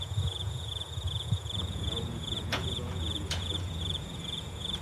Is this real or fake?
fake